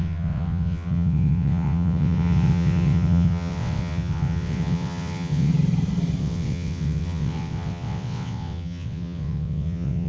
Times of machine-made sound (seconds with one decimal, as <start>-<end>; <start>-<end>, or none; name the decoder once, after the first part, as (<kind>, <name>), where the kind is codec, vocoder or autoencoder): 0.0-5.5 (vocoder, WaveNeXt); 6.2-10.1